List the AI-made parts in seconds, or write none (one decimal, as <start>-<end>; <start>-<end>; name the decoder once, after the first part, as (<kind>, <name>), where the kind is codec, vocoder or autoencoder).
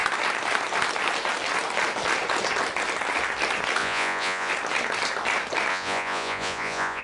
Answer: 3.8-4.5 (vocoder, Vocos); 5.7-7.0